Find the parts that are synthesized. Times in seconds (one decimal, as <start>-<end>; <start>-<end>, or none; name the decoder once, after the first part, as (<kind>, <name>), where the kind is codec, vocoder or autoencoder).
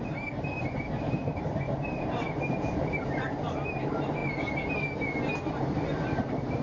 0.0-4.2 (vocoder, BigVGAN v2); 5.5-6.6